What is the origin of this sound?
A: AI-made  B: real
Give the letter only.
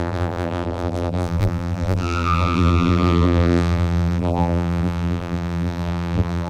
A